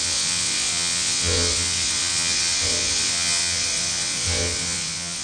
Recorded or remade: remade